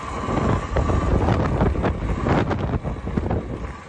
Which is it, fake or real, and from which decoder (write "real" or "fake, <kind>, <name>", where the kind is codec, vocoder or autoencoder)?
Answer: real